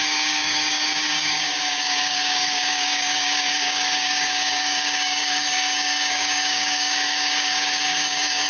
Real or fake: fake